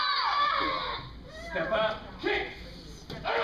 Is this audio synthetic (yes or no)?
no